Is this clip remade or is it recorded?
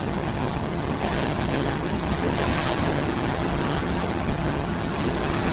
remade